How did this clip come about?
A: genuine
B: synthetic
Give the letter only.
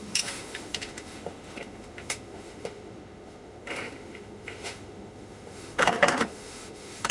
B